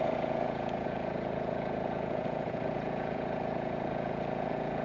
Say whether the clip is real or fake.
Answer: fake